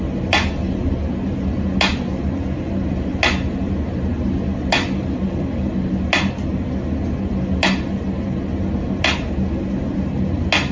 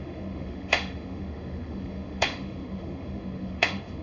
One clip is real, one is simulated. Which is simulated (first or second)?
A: second